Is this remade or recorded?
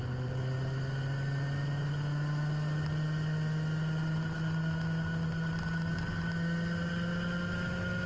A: recorded